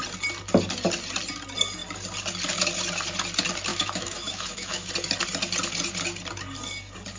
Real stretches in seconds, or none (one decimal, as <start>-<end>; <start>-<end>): 0.0-3.7; 4.9-7.2